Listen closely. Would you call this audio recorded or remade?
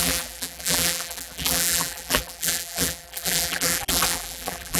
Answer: remade